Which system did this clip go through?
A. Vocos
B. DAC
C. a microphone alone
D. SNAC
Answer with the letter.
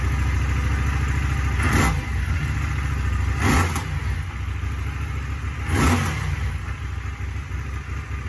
C